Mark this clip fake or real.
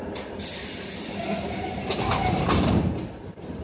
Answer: real